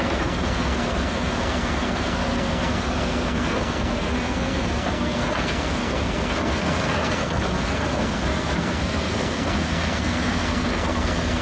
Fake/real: fake